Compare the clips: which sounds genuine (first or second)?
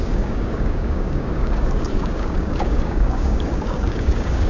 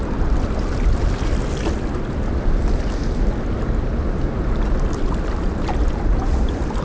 second